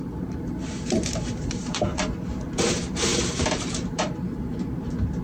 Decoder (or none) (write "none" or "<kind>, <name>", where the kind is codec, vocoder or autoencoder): vocoder, BigVGAN v2